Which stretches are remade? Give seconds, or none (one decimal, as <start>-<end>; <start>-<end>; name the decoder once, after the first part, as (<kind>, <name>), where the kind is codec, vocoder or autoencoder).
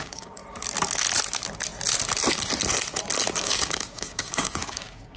0.0-0.4 (codec, DAC); 3.4-5.2